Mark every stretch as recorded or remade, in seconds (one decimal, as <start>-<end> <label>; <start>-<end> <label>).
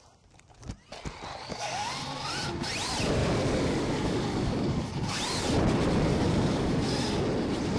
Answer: 0.0-1.3 recorded; 1.3-1.9 remade; 1.9-3.2 recorded; 3.2-5.2 remade; 5.2-6.1 recorded; 6.1-6.9 remade; 6.9-7.8 recorded